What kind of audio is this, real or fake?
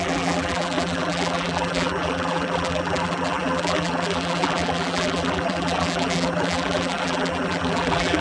fake